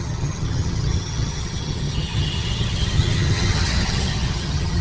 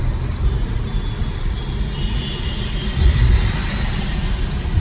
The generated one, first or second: first